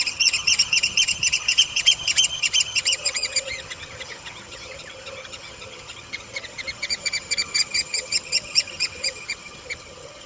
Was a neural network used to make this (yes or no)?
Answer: yes